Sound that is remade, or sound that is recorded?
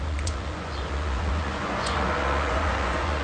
remade